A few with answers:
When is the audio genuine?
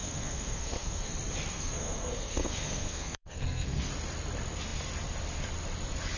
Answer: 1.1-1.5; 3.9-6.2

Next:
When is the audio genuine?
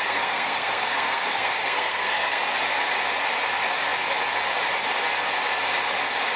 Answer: 2.4-6.4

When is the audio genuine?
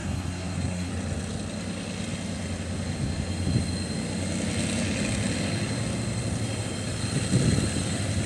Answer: 0.9-8.3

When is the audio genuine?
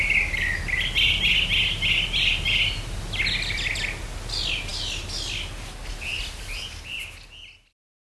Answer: 0.0-8.1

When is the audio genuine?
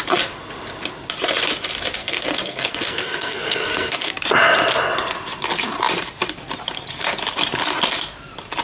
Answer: 0.0-2.0; 4.1-8.6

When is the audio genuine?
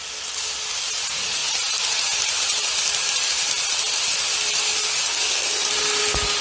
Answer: 0.0-5.1; 5.7-6.4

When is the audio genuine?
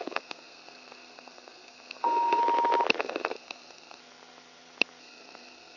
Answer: 2.4-3.0; 4.0-5.0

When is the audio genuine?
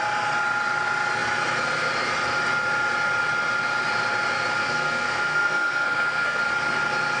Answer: 0.0-4.6; 6.4-7.2